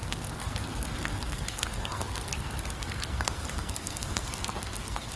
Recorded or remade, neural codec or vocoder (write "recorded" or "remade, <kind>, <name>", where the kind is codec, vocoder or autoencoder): remade, codec, SNAC